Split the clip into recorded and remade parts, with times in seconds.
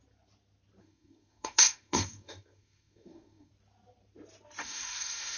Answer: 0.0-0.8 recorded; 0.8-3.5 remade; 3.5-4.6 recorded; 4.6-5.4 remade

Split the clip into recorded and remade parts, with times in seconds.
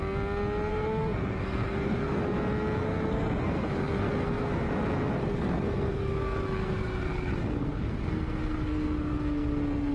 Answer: 0.0-0.7 recorded; 0.7-2.2 remade; 2.2-2.8 recorded; 2.8-4.7 remade; 4.7-5.2 recorded; 5.2-9.9 remade